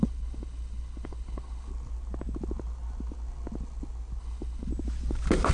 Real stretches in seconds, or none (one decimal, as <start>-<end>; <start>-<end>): 1.7-4.2; 4.7-5.5